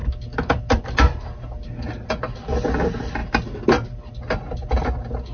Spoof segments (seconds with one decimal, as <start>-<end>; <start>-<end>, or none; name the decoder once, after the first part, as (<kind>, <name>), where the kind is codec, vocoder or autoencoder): none